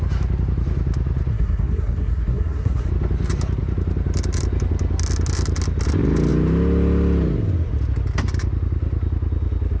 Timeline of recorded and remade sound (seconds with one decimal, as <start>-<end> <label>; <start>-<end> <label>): 0.0-1.3 recorded; 1.3-2.9 remade; 2.9-9.8 recorded